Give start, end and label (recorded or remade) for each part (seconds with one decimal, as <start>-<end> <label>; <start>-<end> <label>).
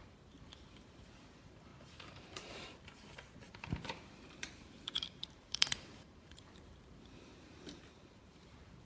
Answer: 0.0-8.9 remade